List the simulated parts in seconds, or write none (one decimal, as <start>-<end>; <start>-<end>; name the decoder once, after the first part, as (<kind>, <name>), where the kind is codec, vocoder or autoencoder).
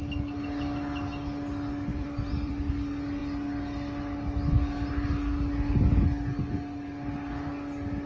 1.9-2.7 (vocoder, BigVGAN v2)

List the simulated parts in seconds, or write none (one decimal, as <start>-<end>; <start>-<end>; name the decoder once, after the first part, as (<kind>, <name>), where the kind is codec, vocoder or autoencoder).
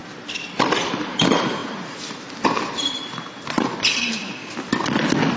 1.0-4.4 (vocoder, BigVGAN v2)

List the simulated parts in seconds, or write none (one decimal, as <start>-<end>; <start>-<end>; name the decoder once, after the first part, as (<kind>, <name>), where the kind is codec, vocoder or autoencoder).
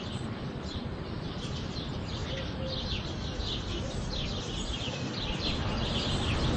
0.0-2.2 (vocoder, BigVGAN v2)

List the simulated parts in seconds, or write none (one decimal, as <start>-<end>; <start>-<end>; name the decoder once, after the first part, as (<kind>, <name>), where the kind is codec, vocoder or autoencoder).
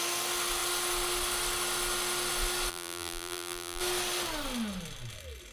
2.7-3.8 (vocoder, BigVGAN v2)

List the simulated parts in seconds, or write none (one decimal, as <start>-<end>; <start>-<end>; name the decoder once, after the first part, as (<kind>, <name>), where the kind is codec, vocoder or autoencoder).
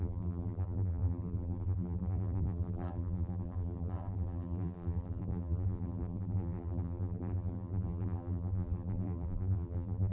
0.0-10.1 (vocoder, BigVGAN v2)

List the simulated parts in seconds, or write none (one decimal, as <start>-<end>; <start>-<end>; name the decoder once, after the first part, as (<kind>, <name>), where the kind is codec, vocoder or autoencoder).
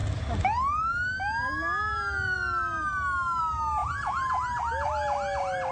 none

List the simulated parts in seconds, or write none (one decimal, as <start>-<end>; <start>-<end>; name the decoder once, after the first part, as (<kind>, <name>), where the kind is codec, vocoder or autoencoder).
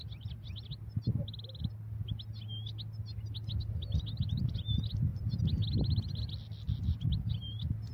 none